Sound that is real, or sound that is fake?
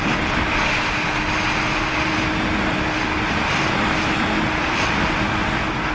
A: real